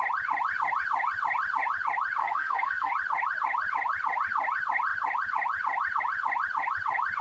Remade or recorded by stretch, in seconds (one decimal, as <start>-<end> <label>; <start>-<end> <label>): 0.0-2.2 recorded; 2.2-2.9 remade; 2.9-7.2 recorded